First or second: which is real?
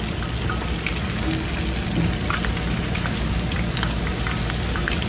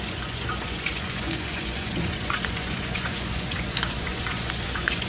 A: first